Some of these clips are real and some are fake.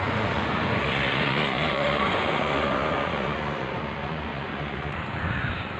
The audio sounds fake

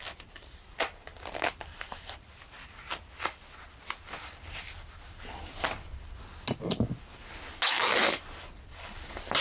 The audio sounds real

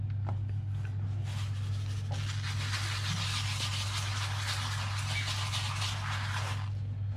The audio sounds real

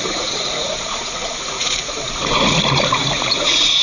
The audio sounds fake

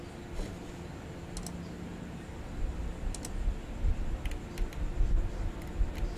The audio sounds real